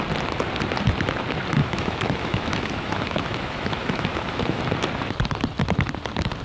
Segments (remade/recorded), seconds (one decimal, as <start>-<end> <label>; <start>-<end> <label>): 0.0-1.6 recorded; 1.6-4.6 remade; 4.6-6.4 recorded